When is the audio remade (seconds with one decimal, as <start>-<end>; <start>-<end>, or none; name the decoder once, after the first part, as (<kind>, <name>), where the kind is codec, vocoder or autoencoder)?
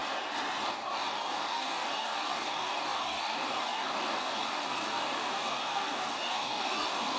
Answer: 0.7-7.2 (codec, DAC)